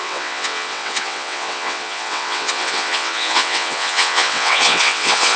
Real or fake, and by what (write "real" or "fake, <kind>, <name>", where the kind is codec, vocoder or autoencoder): fake, vocoder, WaveNeXt